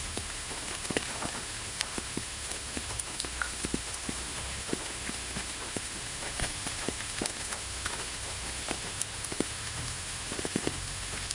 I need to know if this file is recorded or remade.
remade